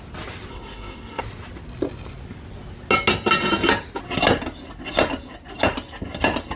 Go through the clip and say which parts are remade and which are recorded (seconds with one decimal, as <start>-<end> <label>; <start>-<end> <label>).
0.0-0.5 recorded; 0.5-1.2 remade; 1.2-6.6 recorded